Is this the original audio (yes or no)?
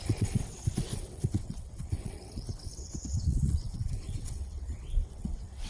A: no